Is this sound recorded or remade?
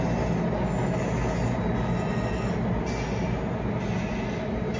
recorded